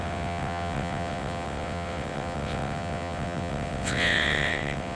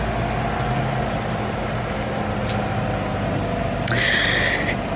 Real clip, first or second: second